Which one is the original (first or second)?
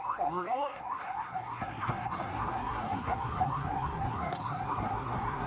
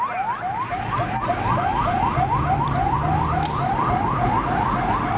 second